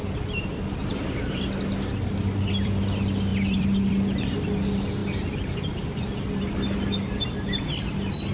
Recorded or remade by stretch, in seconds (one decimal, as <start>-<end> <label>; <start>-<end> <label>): 0.0-8.3 remade